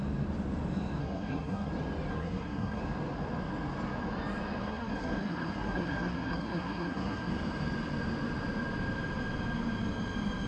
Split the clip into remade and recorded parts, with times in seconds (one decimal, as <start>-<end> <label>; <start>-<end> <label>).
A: 0.0-1.0 recorded; 1.0-1.7 remade; 1.7-2.1 recorded; 2.1-2.8 remade; 2.8-4.6 recorded; 4.6-7.3 remade; 7.3-10.5 recorded